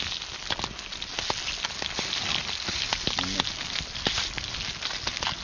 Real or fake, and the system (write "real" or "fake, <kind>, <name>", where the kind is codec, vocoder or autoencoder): real